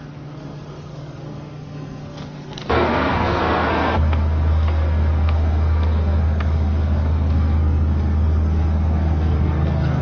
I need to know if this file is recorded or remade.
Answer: remade